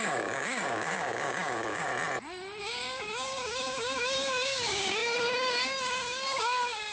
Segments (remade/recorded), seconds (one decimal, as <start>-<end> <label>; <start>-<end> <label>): 0.0-1.9 remade; 1.9-2.6 recorded; 2.6-6.9 remade